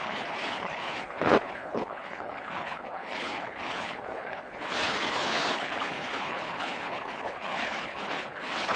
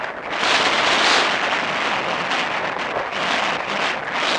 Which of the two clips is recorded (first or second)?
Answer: second